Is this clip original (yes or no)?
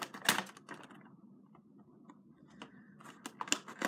yes